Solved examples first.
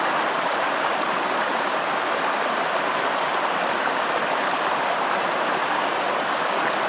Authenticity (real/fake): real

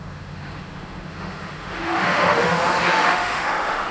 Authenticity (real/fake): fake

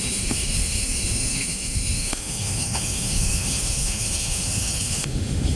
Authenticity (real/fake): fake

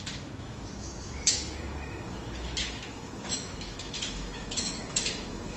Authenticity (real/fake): fake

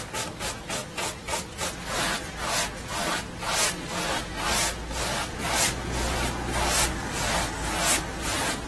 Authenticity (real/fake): real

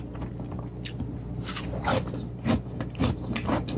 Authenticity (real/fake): real